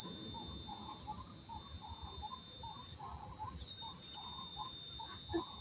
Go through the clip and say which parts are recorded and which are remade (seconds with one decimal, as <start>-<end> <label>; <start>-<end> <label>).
0.0-2.9 recorded; 2.9-3.7 remade; 3.7-4.5 recorded; 4.5-5.0 remade; 5.0-5.6 recorded